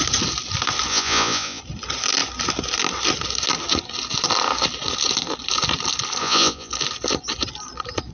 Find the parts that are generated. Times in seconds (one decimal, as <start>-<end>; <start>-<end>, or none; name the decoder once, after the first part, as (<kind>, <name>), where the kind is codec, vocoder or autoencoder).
0.9-1.6 (vocoder, Vocos); 6.2-6.7